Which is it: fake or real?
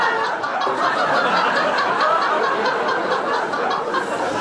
real